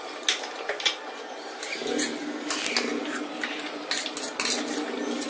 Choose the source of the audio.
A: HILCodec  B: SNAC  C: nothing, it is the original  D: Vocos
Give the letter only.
C